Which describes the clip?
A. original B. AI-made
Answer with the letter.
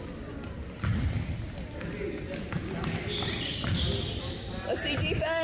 A